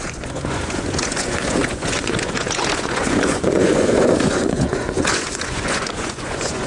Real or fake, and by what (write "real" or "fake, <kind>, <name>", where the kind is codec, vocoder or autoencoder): fake, vocoder, Vocos